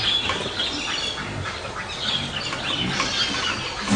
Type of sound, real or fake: real